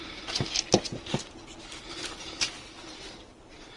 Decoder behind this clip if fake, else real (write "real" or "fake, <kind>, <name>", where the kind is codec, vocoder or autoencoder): real